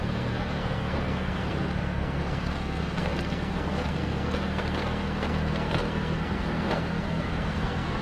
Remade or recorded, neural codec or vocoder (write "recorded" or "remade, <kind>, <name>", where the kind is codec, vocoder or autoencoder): remade, codec, SNAC